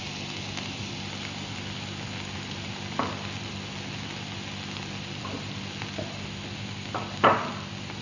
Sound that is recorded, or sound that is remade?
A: recorded